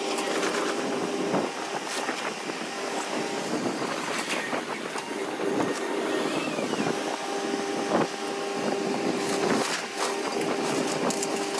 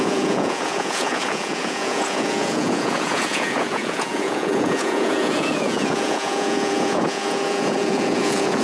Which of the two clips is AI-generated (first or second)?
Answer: second